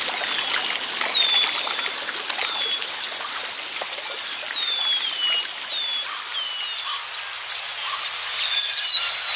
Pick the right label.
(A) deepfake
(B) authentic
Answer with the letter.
B